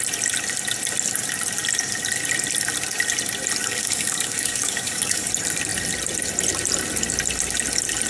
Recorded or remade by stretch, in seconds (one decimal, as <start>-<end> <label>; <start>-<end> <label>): 0.0-3.6 recorded; 3.6-5.3 remade; 5.3-8.1 recorded